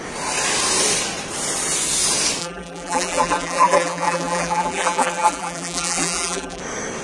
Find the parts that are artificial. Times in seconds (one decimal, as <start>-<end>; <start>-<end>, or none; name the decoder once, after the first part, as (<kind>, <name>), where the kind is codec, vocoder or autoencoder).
2.4-6.6 (vocoder, BigVGAN v2)